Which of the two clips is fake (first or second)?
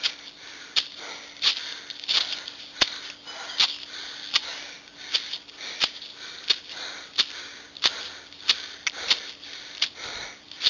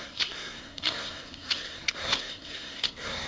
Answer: second